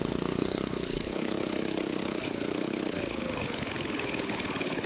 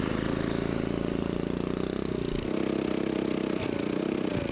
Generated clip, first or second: first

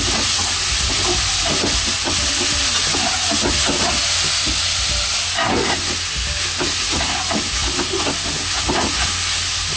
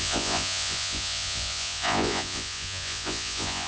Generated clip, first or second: second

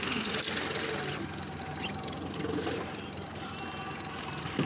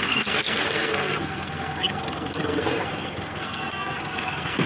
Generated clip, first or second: second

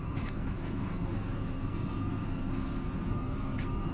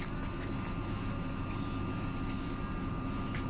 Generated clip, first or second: first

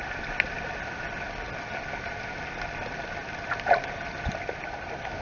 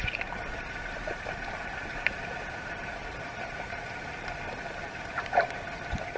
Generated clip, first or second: second